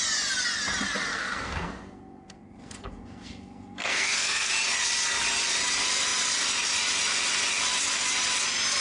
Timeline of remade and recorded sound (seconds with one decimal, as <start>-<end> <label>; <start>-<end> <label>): 0.0-1.1 recorded; 1.1-4.5 remade; 4.5-8.8 recorded